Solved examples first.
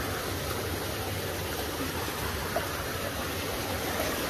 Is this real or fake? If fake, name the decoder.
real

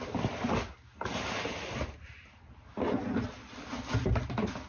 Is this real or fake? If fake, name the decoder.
real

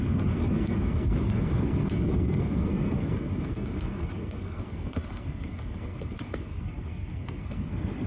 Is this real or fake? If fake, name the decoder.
fake, codec, SNAC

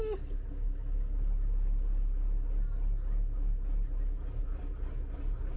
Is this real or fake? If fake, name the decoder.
real